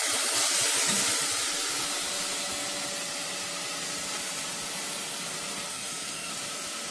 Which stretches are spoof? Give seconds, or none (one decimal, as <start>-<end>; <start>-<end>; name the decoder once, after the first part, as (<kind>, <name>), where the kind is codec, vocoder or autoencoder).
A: 5.7-6.3 (codec, SNAC)